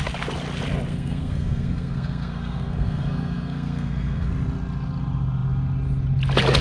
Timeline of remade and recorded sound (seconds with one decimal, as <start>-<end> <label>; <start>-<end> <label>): 0.0-0.9 recorded; 0.9-4.3 remade; 4.3-6.6 recorded